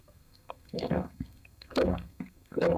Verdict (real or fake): fake